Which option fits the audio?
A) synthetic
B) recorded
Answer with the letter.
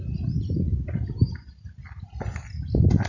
B